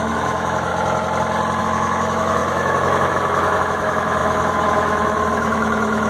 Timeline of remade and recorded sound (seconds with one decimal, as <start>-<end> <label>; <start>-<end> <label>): 0.0-0.7 remade; 0.7-1.6 recorded; 1.6-6.1 remade